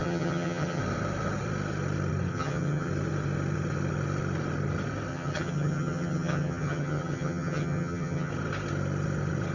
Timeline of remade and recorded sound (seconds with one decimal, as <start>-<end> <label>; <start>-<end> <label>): 0.0-0.8 remade; 0.8-2.3 recorded; 2.3-2.9 remade; 2.9-5.1 recorded; 5.1-8.3 remade; 8.3-9.5 recorded